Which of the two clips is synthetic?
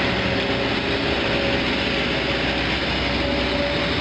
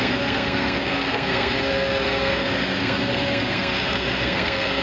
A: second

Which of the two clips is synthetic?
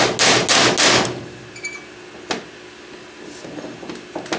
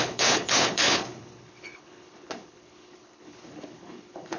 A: second